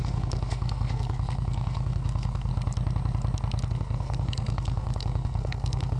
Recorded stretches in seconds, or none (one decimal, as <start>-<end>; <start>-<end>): 2.5-3.7